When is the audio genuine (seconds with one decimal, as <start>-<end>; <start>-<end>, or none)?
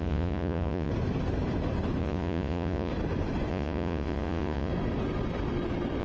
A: 0.9-2.0; 2.9-3.5; 4.7-6.0